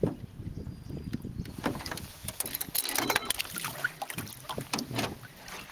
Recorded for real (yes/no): yes